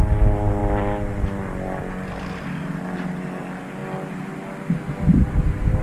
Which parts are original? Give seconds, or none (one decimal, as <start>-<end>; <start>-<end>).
0.0-5.8